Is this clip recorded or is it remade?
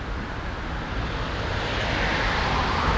recorded